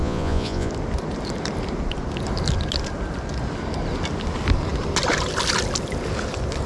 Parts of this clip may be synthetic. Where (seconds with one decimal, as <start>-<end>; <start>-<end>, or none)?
0.0-0.7